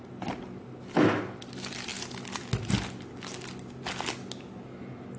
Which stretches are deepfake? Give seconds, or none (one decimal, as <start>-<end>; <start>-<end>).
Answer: none